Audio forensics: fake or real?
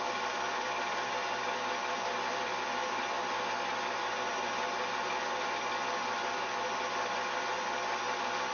real